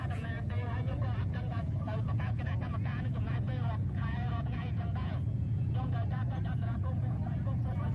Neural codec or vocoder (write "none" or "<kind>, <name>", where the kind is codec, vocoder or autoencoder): vocoder, Vocos